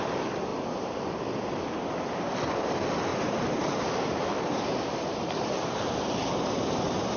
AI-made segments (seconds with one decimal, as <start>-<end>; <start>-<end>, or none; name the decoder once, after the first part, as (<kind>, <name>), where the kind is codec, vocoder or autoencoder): 0.5-1.2 (vocoder, BigVGAN v2); 3.1-7.2